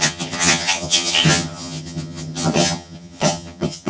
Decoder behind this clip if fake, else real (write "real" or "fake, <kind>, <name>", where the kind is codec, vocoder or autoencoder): fake, vocoder, HiFi-GAN